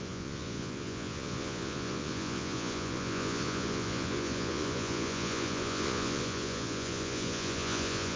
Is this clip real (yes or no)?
no